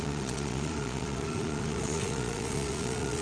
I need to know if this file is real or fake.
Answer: fake